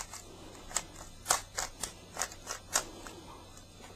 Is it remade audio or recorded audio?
recorded